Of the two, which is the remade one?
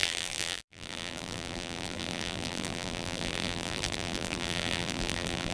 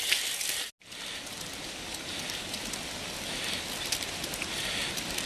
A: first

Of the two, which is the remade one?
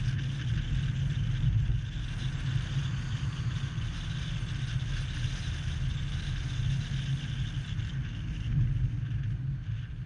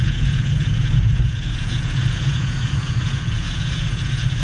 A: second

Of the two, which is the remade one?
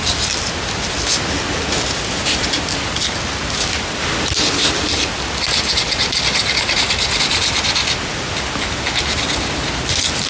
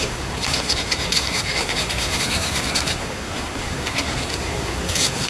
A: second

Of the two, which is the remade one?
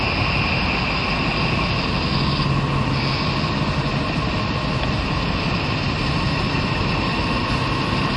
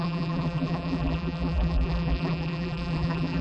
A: second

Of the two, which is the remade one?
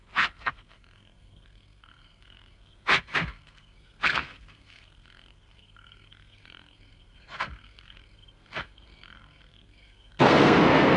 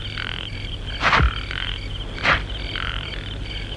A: first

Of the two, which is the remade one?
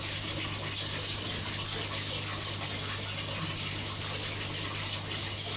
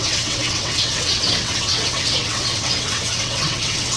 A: second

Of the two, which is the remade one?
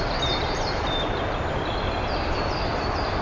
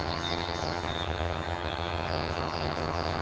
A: second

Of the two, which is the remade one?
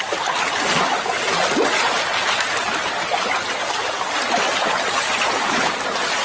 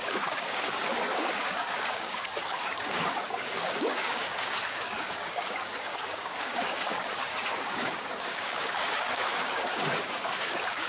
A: second